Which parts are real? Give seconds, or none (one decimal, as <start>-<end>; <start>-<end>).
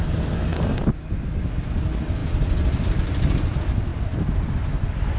0.0-5.2